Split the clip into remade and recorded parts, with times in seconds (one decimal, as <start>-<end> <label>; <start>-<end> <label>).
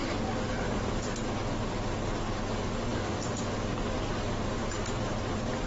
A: 0.0-5.7 recorded